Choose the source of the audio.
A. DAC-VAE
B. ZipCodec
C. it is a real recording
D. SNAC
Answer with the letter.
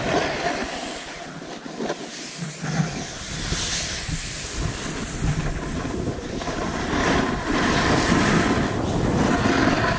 C